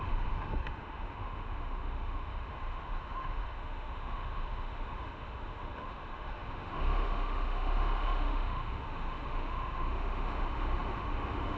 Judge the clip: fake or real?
fake